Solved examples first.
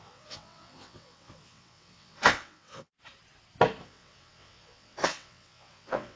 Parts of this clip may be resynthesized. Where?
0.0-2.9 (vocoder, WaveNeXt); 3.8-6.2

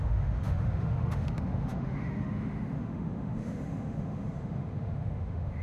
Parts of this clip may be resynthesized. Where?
0.0-5.6 (autoencoder, DAC-VAE)

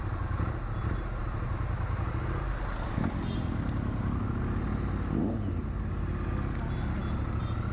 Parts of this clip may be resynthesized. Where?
none

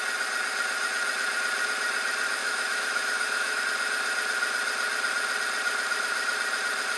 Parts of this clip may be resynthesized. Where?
2.4-3.6 (autoencoder, DAC-VAE)